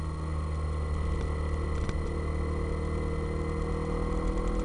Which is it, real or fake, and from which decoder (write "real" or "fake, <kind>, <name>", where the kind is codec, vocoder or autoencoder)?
real